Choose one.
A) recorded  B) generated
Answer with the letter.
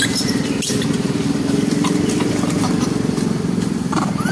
B